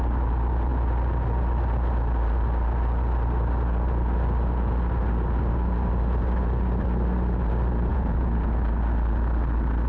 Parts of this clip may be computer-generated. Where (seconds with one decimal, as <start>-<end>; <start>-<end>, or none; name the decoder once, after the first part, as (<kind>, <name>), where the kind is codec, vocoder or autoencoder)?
7.9-8.5 (vocoder, Vocos)